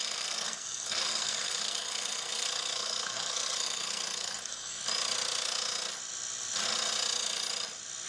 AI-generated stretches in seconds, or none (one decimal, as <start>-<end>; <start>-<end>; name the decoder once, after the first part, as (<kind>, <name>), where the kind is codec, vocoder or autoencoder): 0.0-4.8 (codec, SNAC)